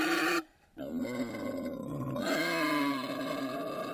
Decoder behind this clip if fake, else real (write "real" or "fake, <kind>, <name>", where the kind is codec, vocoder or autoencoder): real